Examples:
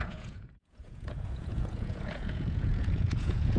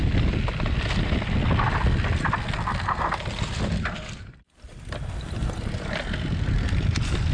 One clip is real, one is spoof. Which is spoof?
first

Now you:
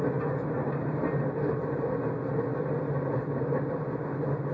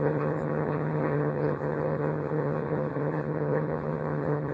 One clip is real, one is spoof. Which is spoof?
second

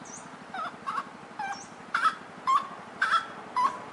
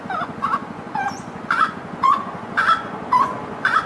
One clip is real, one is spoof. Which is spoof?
second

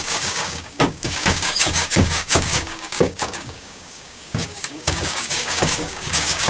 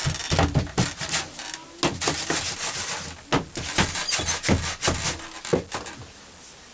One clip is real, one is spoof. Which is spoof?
first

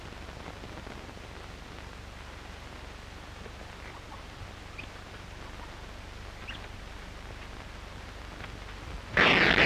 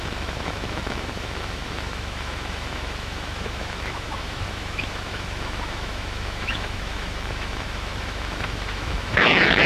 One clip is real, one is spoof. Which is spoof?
second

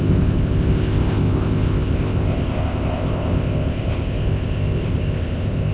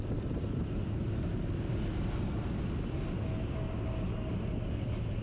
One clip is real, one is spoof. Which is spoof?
first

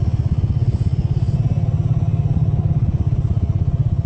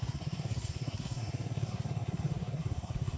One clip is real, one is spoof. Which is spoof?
second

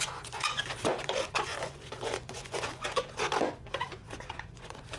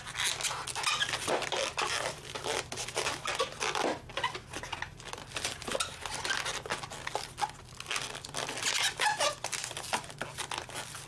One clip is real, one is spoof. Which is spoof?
first